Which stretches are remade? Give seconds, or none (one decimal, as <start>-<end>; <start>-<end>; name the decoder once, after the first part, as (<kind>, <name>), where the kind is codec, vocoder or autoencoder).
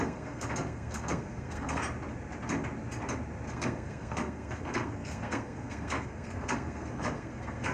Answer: 0.0-1.8 (codec, SNAC); 3.5-7.7